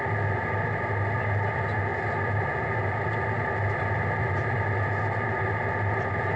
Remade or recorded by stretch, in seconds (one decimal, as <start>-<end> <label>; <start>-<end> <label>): 0.0-6.4 recorded